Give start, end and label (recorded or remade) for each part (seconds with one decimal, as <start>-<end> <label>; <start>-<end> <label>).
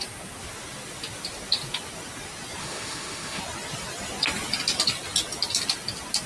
0.0-2.6 recorded; 2.6-3.4 remade; 3.4-6.3 recorded